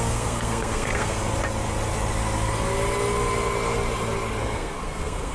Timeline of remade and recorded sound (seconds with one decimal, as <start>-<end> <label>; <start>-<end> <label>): 0.0-1.2 remade; 1.2-4.4 recorded; 4.4-5.3 remade